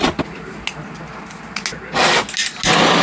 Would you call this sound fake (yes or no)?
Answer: no